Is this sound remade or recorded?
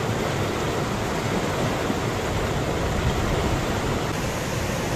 recorded